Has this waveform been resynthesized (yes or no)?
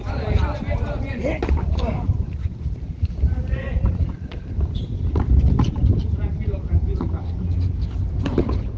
no